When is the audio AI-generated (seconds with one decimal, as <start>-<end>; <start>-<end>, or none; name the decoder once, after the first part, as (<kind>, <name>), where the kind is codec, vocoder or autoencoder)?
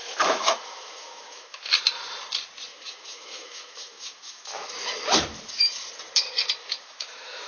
0.0-1.7 (autoencoder, DAC-VAE); 2.7-4.7; 6.6-7.5